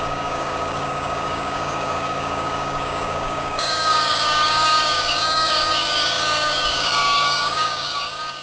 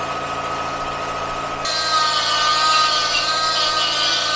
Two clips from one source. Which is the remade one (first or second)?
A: first